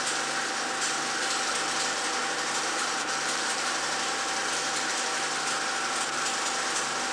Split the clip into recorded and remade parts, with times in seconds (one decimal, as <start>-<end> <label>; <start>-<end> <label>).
0.0-2.2 recorded; 2.2-4.4 remade; 4.4-7.1 recorded